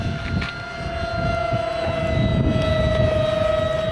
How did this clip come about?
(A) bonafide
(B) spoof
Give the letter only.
A